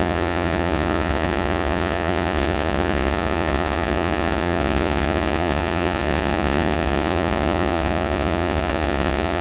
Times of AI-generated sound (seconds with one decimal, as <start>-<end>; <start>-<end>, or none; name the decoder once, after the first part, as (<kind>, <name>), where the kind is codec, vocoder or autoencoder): 0.0-9.4 (vocoder, Vocos)